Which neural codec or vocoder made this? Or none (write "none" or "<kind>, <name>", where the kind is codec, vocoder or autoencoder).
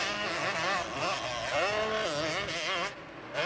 none